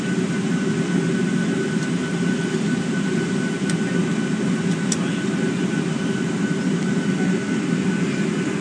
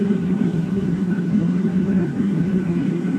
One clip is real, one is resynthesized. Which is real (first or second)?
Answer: first